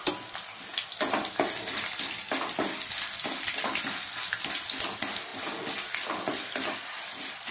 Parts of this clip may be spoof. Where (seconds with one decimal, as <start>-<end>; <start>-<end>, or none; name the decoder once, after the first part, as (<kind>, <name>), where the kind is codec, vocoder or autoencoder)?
5.3-7.5 (vocoder, BigVGAN v2)